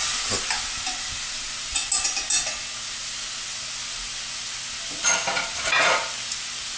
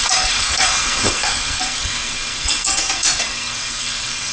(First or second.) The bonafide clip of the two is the first